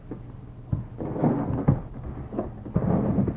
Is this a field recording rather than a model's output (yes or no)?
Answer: yes